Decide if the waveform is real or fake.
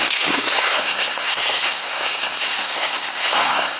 fake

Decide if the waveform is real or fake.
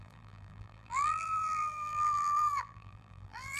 fake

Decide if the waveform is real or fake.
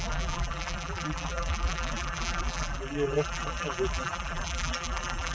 fake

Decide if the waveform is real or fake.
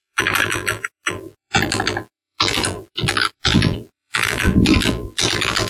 fake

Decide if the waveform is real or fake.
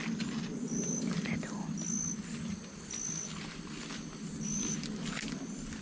real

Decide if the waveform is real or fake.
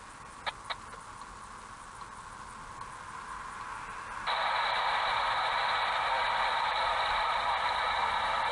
real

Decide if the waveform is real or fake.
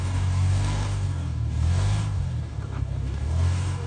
fake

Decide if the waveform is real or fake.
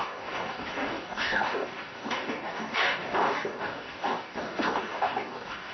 fake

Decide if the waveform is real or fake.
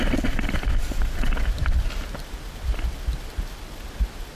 real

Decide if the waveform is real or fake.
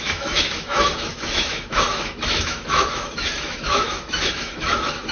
fake